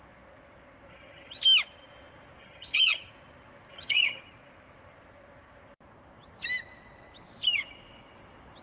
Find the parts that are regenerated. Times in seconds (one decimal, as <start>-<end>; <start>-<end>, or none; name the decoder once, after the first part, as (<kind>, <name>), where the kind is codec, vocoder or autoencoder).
0.9-1.4 (vocoder, HiFi-GAN); 2.4-3.1; 3.7-4.2